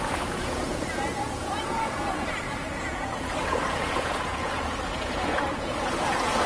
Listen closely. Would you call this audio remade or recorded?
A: remade